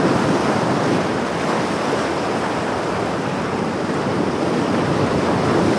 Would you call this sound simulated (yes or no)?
no